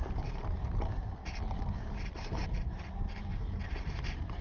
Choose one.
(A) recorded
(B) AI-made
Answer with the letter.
A